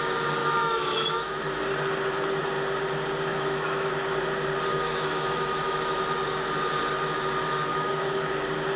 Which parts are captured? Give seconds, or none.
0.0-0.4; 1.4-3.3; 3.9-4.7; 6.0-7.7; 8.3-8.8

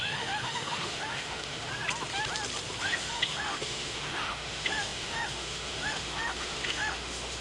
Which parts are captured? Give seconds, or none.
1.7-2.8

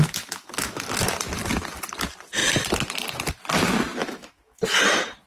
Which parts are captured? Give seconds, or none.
1.1-4.0; 4.8-5.3